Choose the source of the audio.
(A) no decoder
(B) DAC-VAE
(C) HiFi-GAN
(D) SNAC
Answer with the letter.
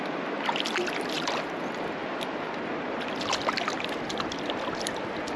A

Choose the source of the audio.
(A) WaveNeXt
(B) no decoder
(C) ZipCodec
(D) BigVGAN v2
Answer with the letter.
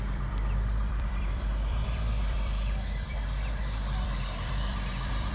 D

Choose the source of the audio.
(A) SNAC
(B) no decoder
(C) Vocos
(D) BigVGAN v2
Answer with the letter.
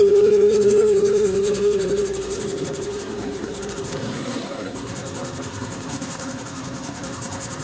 A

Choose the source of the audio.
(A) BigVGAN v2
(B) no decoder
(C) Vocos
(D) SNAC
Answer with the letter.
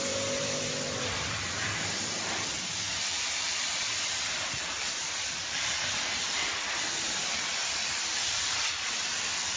A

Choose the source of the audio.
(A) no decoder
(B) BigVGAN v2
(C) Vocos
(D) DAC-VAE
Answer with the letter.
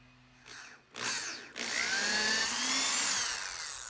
A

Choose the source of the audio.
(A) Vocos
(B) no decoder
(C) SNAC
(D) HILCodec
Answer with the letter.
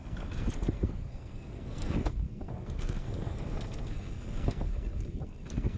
C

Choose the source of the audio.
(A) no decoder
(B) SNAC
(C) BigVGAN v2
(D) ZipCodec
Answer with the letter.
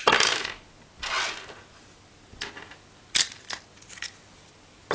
A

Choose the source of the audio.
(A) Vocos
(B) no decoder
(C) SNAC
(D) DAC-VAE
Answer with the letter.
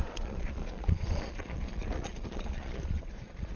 A